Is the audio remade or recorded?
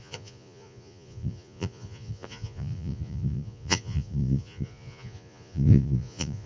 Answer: remade